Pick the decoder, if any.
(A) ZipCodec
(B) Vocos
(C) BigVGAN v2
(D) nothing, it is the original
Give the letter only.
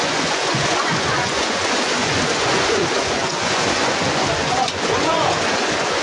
B